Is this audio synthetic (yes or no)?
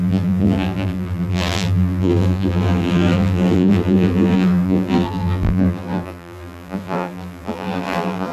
yes